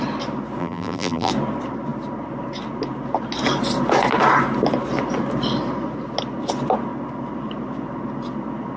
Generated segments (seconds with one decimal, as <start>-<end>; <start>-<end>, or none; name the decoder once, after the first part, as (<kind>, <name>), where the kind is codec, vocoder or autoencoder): 0.6-1.3 (vocoder, BigVGAN v2)